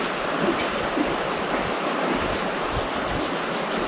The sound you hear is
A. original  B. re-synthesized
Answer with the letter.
A